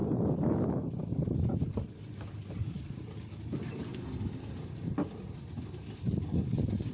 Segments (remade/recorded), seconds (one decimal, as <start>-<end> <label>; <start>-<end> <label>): 0.0-6.9 recorded